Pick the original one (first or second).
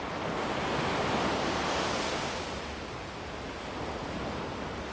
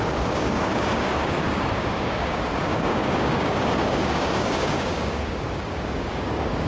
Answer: first